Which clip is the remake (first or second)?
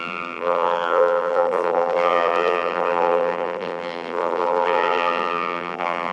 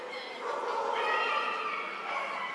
first